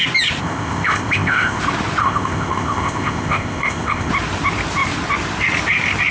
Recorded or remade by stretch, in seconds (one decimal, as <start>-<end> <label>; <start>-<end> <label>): 0.0-0.4 recorded; 0.4-1.6 remade; 1.6-2.0 recorded; 2.0-4.1 remade; 4.1-6.1 recorded